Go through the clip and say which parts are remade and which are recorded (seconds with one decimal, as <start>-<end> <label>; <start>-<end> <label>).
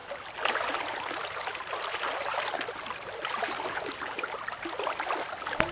0.0-5.7 recorded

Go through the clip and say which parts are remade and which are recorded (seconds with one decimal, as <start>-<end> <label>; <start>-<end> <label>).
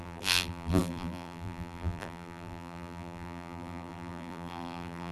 0.0-5.1 remade